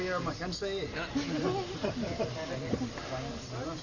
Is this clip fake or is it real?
real